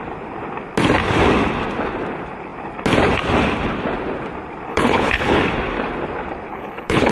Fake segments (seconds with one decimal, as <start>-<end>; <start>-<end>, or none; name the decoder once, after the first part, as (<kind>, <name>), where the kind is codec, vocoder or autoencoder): 4.7-5.4 (codec, HILCodec); 6.5-7.1